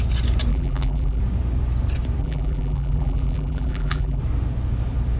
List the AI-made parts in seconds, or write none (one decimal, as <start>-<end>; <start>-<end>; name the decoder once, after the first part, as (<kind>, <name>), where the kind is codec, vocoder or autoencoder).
0.5-1.2 (vocoder, BigVGAN v2); 2.2-4.2

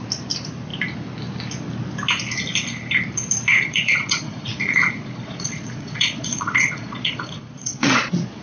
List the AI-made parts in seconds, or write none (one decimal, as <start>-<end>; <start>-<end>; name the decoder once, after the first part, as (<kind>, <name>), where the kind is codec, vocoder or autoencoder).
3.5-8.4 (vocoder, Vocos)

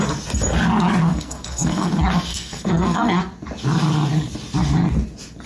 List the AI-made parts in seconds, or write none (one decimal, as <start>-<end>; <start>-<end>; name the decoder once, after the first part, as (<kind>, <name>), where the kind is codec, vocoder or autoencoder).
1.1-1.9 (codec, SNAC); 2.3-3.2

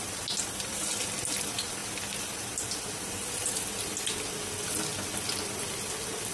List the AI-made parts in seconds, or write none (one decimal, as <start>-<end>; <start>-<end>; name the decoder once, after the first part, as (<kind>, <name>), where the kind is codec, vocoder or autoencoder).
none

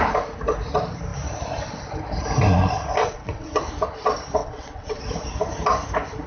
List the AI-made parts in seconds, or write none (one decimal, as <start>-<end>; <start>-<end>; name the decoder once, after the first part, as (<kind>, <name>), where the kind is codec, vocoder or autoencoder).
3.0-3.6 (vocoder, WaveNeXt); 4.4-5.0

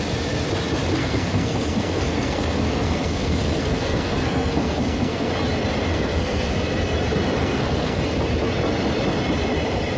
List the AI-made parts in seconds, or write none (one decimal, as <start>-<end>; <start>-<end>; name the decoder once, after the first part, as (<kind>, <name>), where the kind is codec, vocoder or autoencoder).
1.0-5.3 (codec, SNAC); 5.9-6.5; 7.4-8.0